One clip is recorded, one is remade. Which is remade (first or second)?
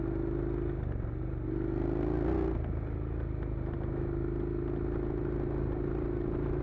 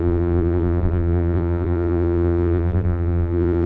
second